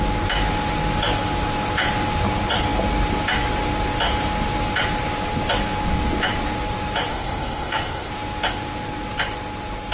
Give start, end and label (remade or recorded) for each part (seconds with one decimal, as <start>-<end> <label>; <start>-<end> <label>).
0.0-7.1 recorded; 7.1-8.1 remade; 8.1-9.9 recorded